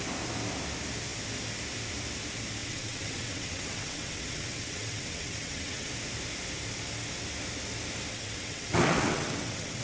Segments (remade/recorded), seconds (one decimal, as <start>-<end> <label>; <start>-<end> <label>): 0.0-2.6 recorded; 2.6-5.9 remade; 5.9-8.1 recorded; 8.1-9.8 remade